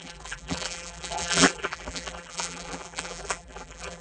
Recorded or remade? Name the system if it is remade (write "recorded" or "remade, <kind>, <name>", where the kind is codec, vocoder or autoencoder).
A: remade, vocoder, BigVGAN v2